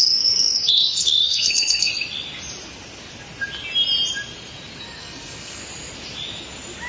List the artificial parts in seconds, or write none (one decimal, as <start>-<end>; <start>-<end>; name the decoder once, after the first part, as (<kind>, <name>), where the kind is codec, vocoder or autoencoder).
0.0-1.9 (codec, SNAC); 5.0-5.6